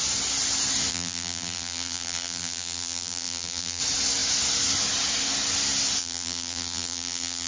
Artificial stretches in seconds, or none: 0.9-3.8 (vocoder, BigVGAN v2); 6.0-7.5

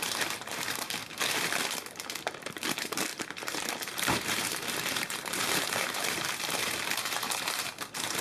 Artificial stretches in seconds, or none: 0.0-1.0 (vocoder, BigVGAN v2); 2.4-8.2